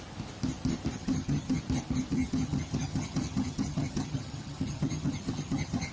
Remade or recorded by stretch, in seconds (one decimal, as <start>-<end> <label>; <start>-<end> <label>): 0.0-1.0 recorded; 1.0-1.6 remade; 1.6-2.1 recorded; 2.1-5.9 remade